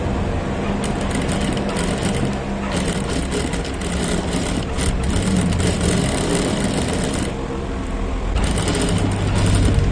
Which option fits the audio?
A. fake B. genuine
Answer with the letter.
B